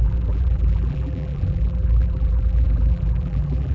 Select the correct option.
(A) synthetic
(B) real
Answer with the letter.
A